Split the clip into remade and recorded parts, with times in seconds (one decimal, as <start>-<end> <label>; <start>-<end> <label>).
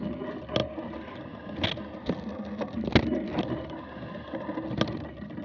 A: 0.0-5.4 recorded